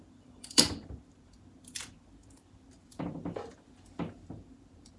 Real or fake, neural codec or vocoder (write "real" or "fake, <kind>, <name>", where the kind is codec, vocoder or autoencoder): fake, vocoder, BigVGAN v2